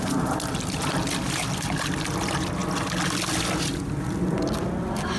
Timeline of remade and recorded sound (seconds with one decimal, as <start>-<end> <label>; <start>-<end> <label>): 0.0-5.2 recorded